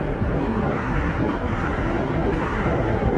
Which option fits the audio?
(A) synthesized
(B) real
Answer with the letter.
A